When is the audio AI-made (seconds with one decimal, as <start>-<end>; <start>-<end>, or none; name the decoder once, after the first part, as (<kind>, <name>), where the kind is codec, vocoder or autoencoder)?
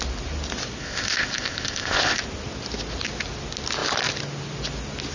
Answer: 0.8-2.2 (codec, ZipCodec)